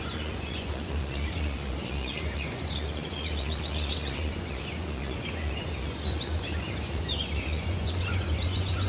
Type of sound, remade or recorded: remade